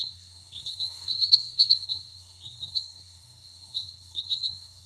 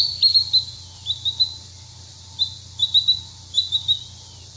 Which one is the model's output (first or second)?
first